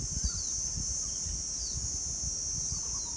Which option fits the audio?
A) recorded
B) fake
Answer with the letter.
A